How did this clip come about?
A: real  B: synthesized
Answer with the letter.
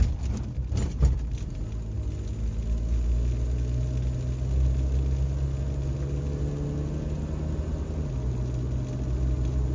A